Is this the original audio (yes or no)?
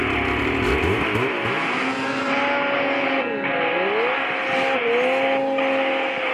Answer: yes